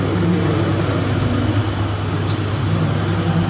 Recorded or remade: recorded